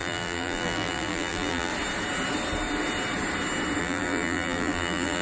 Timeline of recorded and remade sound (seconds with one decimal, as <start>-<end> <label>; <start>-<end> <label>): 0.0-1.7 remade; 1.7-3.8 recorded; 3.8-5.2 remade